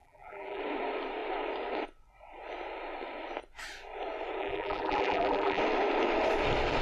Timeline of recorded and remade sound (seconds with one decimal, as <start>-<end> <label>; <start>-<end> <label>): 0.0-0.6 remade; 0.6-4.4 recorded; 4.4-5.6 remade; 5.6-6.8 recorded